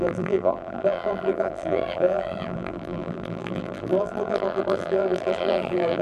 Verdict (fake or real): fake